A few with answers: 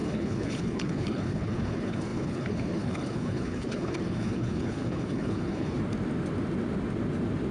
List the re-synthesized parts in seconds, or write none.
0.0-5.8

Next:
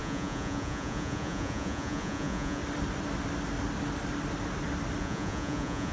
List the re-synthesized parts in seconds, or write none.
0.0-2.6; 5.0-5.9

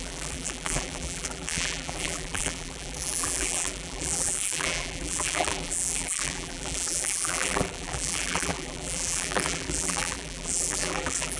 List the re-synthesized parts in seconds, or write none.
0.0-11.4

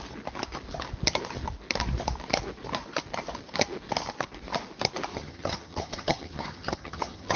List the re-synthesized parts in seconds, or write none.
5.1-7.4

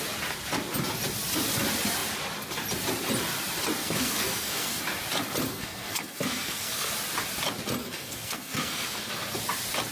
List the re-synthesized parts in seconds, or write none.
3.8-4.8; 5.5-6.9; 7.8-9.1